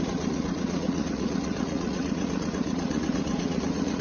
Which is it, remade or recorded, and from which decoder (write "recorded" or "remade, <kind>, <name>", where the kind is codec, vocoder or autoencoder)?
remade, vocoder, Vocos